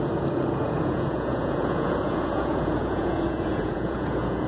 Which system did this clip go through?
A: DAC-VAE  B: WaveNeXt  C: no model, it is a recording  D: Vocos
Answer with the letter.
D